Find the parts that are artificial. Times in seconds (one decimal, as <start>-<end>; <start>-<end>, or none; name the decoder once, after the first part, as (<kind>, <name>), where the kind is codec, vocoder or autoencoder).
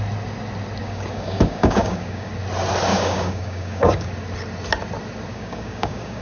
0.8-2.3 (codec, DAC); 2.9-4.1; 5.3-6.2